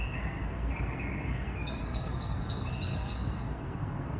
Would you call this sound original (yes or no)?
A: no